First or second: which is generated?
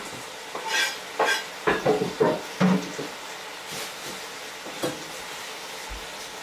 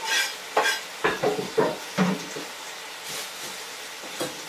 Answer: second